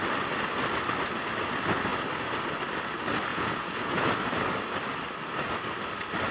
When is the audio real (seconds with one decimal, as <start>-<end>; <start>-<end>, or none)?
0.0-3.3; 4.1-6.3